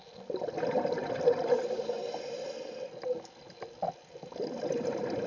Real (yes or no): yes